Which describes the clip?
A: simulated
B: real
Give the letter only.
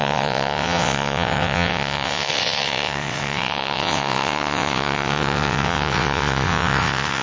A